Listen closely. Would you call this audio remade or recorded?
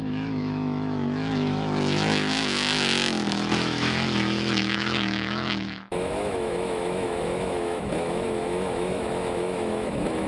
remade